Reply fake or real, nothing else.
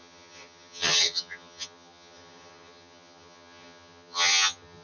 fake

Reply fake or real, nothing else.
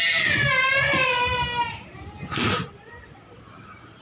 real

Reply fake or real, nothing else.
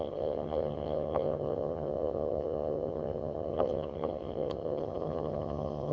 fake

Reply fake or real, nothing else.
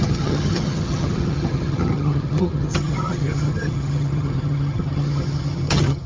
fake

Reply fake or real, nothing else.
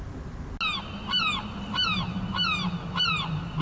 real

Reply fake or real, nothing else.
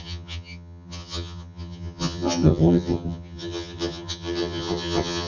fake